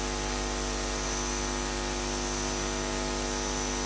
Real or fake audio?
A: real